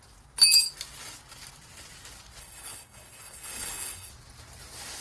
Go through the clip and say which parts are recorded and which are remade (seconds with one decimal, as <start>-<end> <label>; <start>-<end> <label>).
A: 0.0-2.4 recorded; 2.4-4.1 remade; 4.1-5.0 recorded